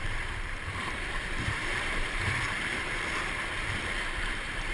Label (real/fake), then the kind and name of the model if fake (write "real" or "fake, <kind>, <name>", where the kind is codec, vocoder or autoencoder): fake, vocoder, BigVGAN v2